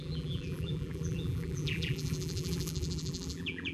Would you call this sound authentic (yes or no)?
no